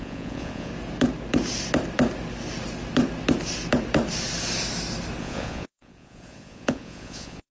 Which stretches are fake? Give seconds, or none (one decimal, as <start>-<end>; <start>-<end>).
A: 0.0-0.7; 5.2-7.5